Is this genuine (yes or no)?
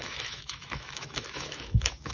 no